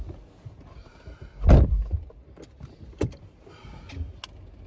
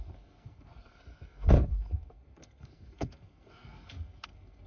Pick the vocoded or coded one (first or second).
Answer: second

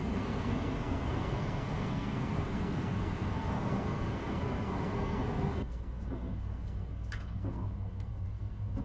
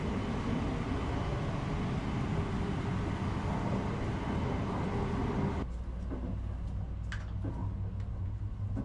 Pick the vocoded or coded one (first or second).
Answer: first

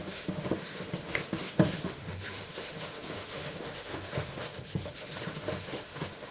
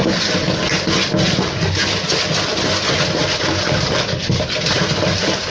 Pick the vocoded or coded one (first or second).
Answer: first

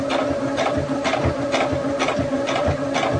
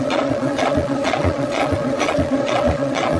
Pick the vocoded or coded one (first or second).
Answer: second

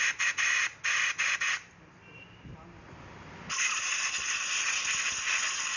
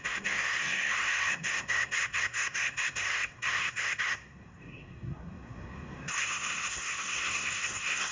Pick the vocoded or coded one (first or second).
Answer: second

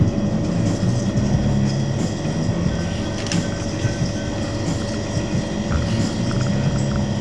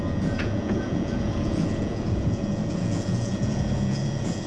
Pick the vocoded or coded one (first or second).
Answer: second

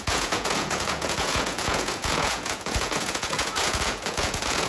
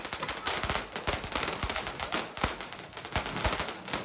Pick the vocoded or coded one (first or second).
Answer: first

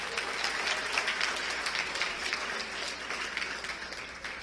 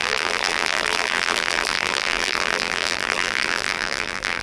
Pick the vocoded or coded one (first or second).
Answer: second